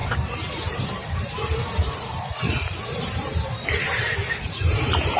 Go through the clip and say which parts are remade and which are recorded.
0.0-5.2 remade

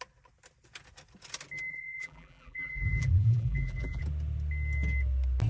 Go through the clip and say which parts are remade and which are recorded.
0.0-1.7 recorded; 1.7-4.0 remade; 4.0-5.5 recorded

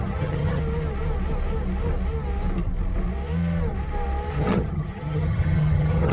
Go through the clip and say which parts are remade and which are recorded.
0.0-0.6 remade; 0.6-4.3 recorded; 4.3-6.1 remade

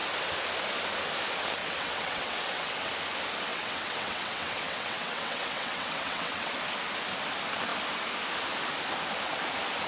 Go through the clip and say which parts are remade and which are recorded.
0.0-1.6 recorded; 1.6-2.9 remade; 2.9-3.5 recorded; 3.5-6.5 remade; 6.5-9.9 recorded

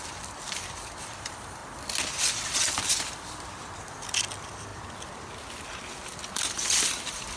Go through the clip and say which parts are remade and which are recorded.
0.0-1.6 remade; 1.6-2.2 recorded; 2.2-2.9 remade; 2.9-3.8 recorded; 3.8-4.7 remade; 4.7-6.5 recorded; 6.5-7.4 remade

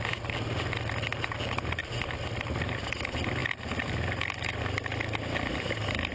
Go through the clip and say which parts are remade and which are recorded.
0.0-6.1 recorded

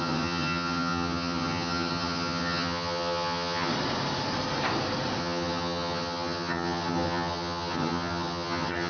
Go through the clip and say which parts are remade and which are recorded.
0.0-3.7 remade; 3.7-5.2 recorded; 5.2-8.9 remade

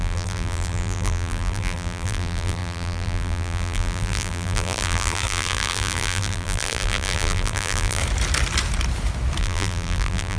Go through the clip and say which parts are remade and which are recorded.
0.0-8.0 remade; 8.0-9.4 recorded; 9.4-10.4 remade